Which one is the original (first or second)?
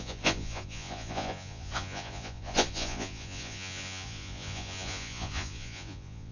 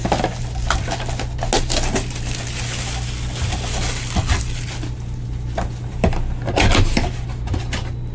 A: second